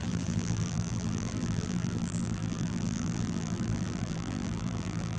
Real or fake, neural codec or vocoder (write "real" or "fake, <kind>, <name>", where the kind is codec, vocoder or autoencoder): fake, vocoder, BigVGAN v2